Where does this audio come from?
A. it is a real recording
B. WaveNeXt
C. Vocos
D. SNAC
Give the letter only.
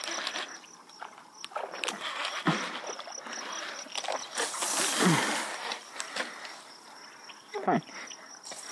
A